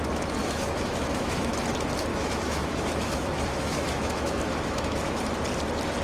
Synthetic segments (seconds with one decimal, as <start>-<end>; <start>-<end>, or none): 0.4-1.5; 2.1-5.2